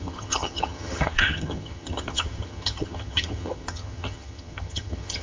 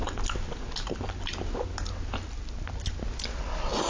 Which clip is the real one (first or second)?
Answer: second